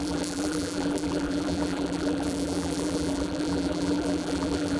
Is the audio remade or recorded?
remade